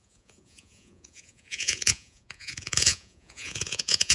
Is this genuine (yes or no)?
no